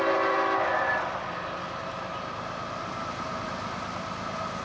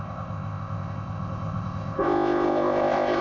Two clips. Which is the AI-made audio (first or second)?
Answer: second